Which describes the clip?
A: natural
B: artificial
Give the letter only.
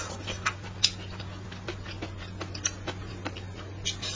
A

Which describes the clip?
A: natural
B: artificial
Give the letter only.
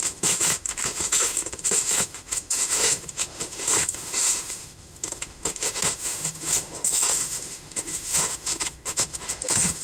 B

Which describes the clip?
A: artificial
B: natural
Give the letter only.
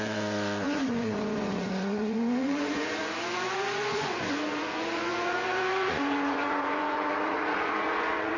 A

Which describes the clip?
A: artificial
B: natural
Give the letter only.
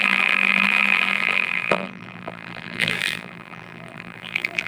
A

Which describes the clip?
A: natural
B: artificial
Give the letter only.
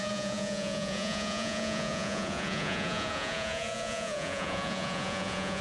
B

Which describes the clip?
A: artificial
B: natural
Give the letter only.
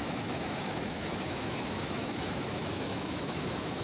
A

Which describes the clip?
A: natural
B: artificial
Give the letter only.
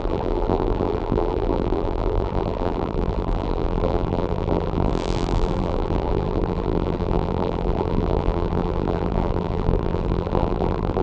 B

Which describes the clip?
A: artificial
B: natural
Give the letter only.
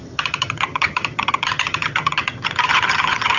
A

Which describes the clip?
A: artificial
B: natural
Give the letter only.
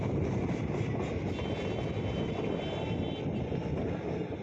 B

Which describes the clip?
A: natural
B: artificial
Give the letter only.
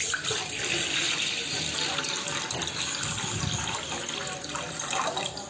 A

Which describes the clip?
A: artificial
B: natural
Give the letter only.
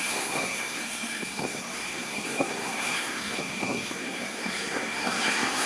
A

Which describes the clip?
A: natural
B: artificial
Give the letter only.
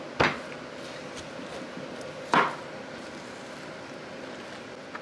A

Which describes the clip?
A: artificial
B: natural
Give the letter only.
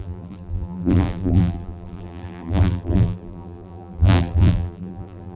A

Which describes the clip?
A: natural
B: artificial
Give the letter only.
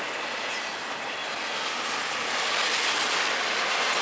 A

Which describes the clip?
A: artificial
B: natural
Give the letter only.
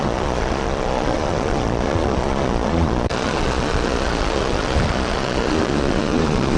A